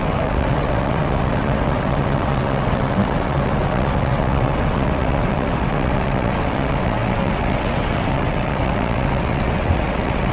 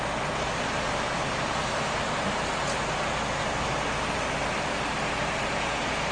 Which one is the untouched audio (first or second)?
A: second